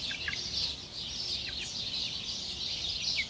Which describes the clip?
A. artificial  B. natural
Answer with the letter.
B